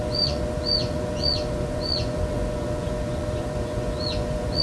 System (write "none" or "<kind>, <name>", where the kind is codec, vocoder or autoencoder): vocoder, Vocos